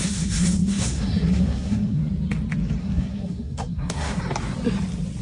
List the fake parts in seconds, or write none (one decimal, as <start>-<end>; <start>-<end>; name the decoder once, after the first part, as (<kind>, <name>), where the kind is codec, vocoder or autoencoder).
0.0-2.1 (codec, SNAC); 2.8-4.2